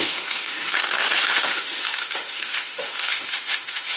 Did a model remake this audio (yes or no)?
yes